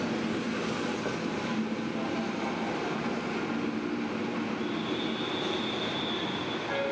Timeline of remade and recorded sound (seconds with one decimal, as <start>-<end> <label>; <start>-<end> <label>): 0.0-6.9 recorded